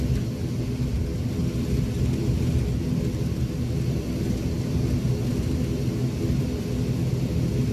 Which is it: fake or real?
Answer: real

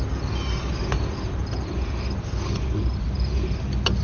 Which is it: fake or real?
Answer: real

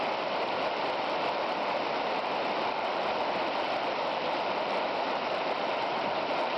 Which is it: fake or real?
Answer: fake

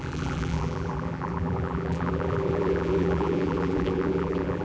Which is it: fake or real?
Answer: fake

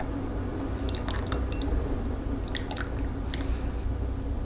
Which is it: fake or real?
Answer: real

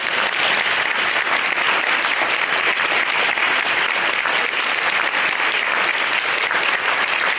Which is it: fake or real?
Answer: real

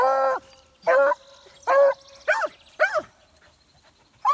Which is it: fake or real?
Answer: real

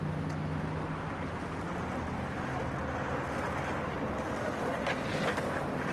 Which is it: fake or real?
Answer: real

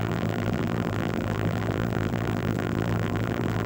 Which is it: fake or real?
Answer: fake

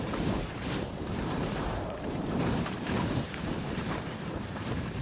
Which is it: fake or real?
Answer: fake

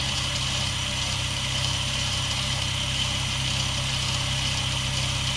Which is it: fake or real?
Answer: fake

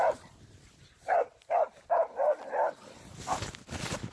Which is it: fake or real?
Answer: real